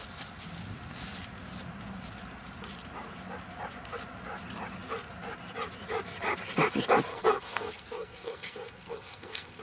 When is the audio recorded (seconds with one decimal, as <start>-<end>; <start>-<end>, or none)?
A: 0.0-7.1